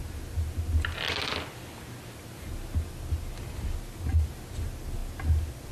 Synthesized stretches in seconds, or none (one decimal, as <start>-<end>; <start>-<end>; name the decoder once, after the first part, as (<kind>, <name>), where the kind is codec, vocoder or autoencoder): none